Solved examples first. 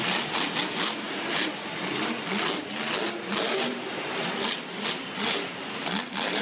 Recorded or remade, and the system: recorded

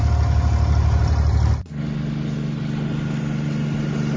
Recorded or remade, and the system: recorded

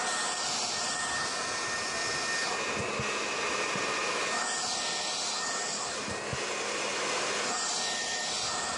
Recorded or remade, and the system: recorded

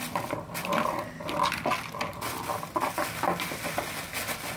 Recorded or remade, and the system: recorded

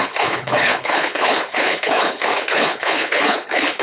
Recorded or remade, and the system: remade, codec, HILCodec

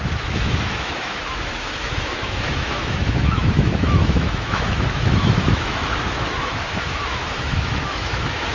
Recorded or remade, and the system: remade, autoencoder, DAC-VAE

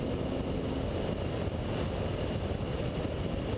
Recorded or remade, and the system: recorded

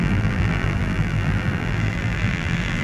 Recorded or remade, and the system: remade, vocoder, BigVGAN v2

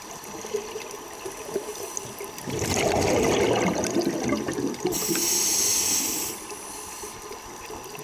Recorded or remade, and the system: recorded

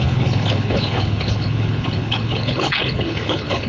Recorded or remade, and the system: remade, codec, HILCodec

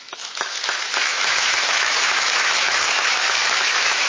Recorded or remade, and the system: remade, autoencoder, DAC-VAE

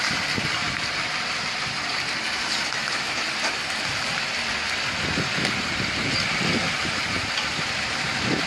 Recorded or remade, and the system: remade, vocoder, BigVGAN v2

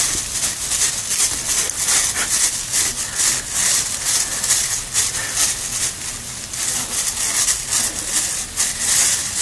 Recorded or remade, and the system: recorded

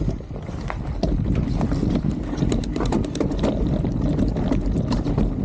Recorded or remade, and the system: recorded